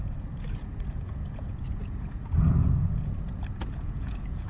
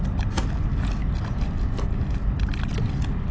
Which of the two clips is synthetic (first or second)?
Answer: first